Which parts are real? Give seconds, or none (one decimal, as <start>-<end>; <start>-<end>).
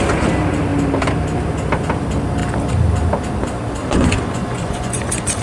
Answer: 0.0-3.8